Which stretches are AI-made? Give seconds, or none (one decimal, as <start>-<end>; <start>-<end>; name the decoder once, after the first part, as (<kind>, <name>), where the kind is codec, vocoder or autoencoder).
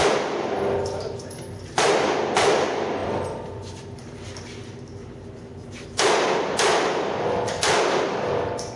none